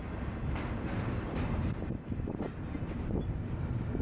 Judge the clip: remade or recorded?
remade